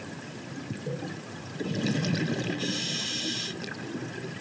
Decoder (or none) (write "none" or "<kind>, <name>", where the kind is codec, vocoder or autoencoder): none